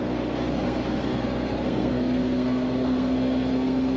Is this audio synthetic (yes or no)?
yes